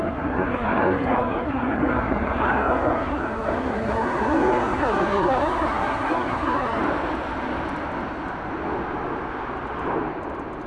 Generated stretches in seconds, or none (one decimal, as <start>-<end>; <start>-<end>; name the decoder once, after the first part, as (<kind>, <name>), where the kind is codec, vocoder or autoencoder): 0.0-6.8 (codec, SNAC)